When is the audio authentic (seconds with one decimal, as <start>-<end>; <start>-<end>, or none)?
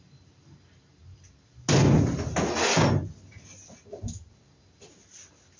0.0-5.6